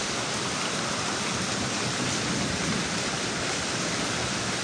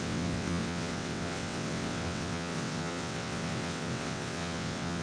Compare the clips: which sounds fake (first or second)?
second